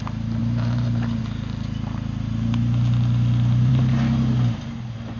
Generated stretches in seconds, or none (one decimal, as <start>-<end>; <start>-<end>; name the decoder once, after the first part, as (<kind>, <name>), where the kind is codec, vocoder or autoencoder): 0.4-1.2 (vocoder, BigVGAN v2); 3.7-5.2